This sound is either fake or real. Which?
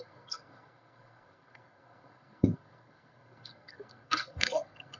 fake